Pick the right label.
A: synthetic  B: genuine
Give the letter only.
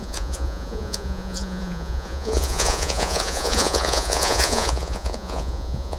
A